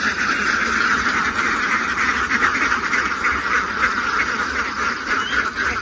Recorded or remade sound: recorded